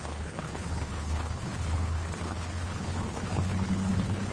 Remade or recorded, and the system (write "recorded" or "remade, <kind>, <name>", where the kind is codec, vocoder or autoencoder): remade, codec, HILCodec